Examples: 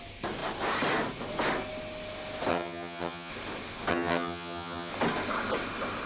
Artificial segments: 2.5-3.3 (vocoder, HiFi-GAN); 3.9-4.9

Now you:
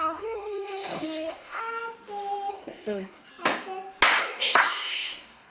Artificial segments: 0.0-1.6 (codec, SNAC); 2.5-3.3; 4.2-5.5